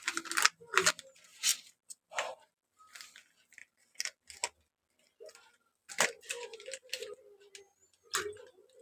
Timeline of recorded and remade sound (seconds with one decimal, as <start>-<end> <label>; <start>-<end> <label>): 0.0-8.8 recorded